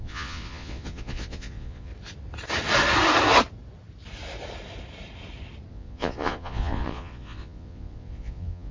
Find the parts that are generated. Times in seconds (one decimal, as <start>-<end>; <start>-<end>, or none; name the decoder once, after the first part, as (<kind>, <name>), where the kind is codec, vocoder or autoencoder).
0.0-1.9 (vocoder, Vocos); 5.7-8.7

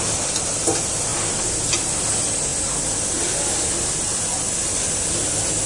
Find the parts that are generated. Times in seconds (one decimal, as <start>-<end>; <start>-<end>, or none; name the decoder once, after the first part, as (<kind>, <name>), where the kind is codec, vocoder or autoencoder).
none

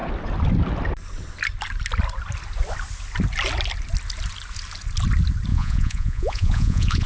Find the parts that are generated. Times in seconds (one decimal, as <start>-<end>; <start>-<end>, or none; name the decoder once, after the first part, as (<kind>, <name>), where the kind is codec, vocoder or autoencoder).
5.5-7.1 (vocoder, Vocos)

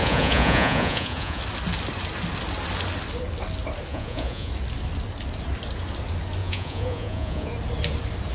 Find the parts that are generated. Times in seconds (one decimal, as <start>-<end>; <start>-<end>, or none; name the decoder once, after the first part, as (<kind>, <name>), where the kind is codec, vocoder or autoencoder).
0.0-1.4 (vocoder, Vocos); 3.9-4.5; 6.4-7.5

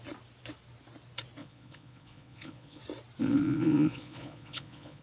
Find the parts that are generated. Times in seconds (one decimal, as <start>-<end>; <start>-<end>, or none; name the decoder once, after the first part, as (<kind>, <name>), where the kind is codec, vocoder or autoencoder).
1.4-2.8 (vocoder, Vocos); 3.2-5.0